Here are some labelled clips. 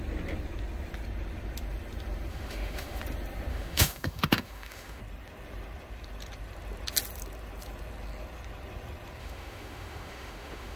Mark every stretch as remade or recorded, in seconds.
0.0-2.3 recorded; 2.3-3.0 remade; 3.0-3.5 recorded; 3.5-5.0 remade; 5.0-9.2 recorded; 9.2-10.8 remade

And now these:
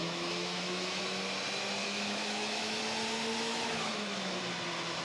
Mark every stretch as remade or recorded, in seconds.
0.0-1.0 remade; 1.0-1.8 recorded; 1.8-2.8 remade; 2.8-3.5 recorded; 3.5-4.4 remade; 4.4-5.0 recorded

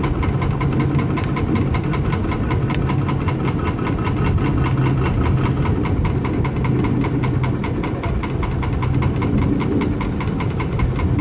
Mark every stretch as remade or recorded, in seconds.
0.0-11.2 recorded